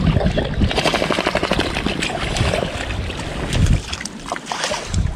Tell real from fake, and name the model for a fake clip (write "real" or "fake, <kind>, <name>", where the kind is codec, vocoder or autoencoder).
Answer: real